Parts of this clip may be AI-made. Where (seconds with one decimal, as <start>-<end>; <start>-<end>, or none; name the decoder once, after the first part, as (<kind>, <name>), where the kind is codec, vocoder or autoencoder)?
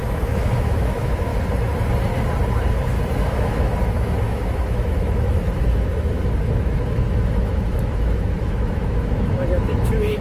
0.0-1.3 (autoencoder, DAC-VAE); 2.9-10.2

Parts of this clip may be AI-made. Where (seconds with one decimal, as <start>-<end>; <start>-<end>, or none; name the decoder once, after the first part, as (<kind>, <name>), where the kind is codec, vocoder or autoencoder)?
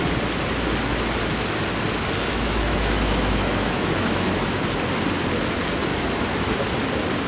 2.3-4.6 (autoencoder, DAC-VAE); 5.9-6.6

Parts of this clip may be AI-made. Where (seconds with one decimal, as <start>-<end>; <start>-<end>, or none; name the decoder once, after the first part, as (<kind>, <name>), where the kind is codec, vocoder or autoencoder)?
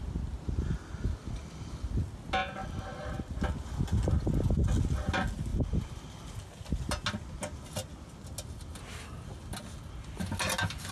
none